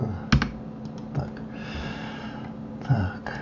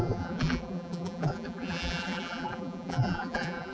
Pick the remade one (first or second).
second